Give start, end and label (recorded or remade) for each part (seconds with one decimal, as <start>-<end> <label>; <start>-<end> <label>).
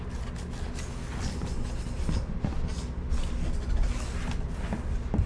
0.0-5.3 recorded